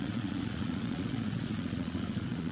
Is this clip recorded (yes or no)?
no